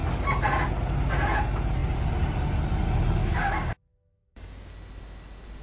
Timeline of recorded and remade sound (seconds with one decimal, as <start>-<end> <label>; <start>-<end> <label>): 0.0-3.2 recorded; 3.2-4.7 remade; 4.7-5.6 recorded